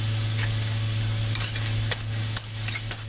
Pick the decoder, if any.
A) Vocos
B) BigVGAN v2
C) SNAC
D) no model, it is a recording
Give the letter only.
D